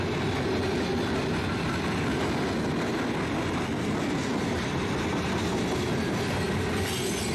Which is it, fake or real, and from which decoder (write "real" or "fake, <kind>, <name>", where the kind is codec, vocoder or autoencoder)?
real